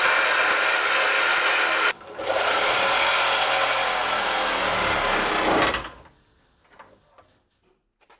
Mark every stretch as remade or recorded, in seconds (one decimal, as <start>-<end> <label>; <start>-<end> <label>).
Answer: 0.0-8.2 recorded